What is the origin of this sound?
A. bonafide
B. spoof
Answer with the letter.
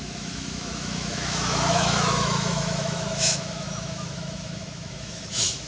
B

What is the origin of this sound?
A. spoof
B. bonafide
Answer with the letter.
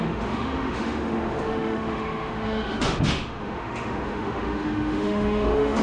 A